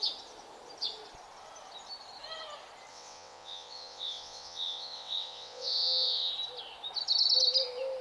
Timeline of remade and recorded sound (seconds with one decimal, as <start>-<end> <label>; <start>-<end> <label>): 0.0-2.9 recorded; 2.9-6.3 remade; 6.3-8.0 recorded

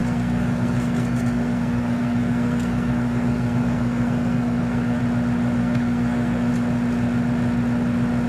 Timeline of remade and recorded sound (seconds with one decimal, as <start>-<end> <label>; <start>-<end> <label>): 0.0-5.0 remade; 5.0-5.6 recorded; 5.6-6.5 remade; 6.5-8.3 recorded